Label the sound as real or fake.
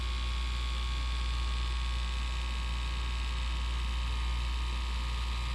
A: real